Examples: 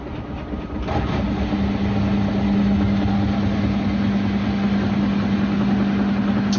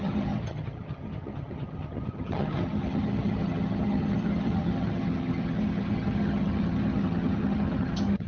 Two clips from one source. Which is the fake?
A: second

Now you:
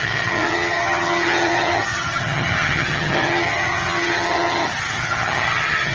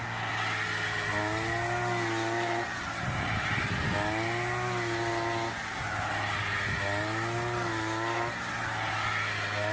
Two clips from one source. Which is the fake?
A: first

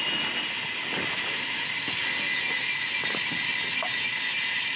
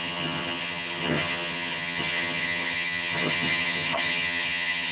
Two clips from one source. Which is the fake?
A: second